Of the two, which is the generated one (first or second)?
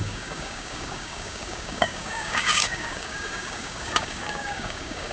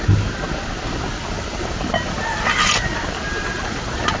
first